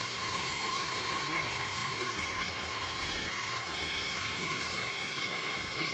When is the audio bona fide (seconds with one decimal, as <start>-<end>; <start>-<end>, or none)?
none